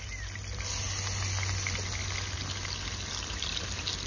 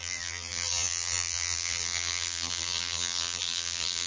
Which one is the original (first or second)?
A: first